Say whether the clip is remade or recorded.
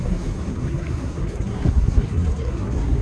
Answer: remade